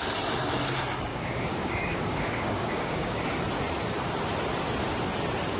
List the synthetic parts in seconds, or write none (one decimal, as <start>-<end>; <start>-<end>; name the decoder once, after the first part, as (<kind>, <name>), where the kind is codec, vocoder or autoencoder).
1.1-3.4 (codec, DAC)